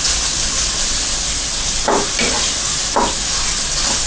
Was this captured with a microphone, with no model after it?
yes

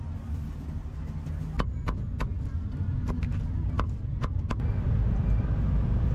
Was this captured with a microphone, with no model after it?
yes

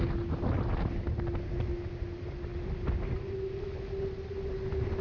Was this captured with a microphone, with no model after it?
yes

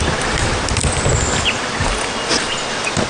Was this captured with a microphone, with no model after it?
yes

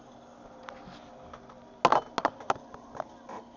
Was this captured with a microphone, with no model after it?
yes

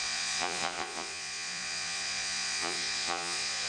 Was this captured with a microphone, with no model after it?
no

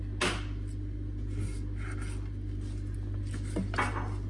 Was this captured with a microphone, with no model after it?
yes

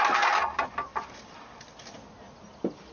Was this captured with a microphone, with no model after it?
yes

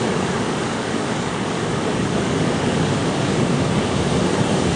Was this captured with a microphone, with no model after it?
no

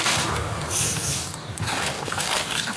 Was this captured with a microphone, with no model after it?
no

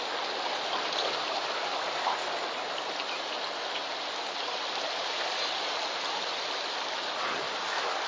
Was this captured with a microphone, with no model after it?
yes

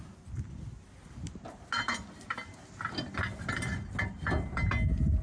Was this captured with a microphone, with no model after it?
yes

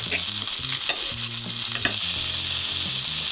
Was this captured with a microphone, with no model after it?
yes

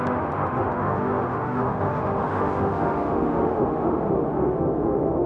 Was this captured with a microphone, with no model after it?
no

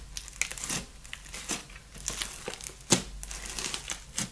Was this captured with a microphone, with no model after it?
yes